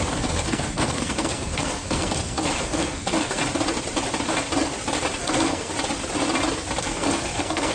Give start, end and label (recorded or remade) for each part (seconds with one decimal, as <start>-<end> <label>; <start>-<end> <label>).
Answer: 0.0-3.4 remade; 3.4-5.2 recorded; 5.2-5.7 remade; 5.7-6.8 recorded; 6.8-7.7 remade